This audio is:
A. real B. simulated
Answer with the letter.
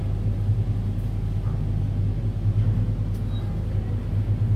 A